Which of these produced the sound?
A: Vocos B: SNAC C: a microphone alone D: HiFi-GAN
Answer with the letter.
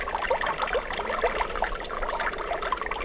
C